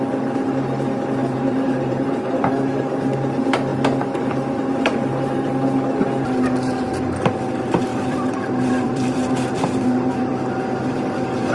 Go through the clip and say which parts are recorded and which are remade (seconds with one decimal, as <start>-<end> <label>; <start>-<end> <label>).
0.0-1.2 recorded; 1.2-2.5 remade; 2.5-7.9 recorded; 7.9-10.4 remade; 10.4-11.5 recorded